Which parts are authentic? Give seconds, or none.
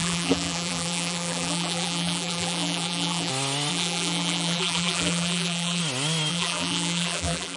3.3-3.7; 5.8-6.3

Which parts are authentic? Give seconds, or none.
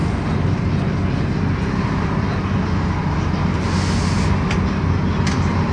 0.8-3.0; 3.6-5.7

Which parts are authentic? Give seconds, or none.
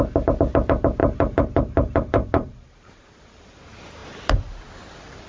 0.0-1.0; 3.6-5.3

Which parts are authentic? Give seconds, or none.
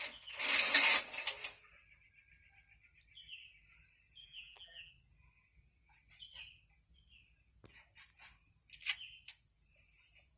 0.0-4.2; 4.9-10.4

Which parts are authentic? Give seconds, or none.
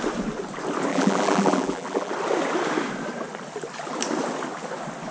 0.0-0.9; 2.1-5.1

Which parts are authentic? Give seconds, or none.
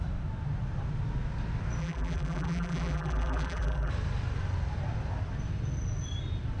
0.0-1.8; 3.9-6.6